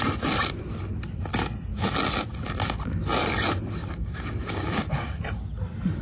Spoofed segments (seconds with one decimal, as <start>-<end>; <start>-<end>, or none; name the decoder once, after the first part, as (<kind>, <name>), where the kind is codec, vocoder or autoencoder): 3.8-5.2 (codec, DAC)